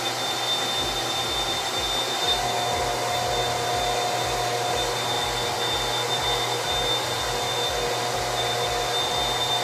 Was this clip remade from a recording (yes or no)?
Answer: no